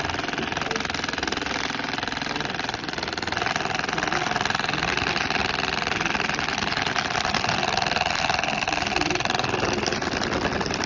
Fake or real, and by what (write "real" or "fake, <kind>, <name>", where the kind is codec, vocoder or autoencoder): real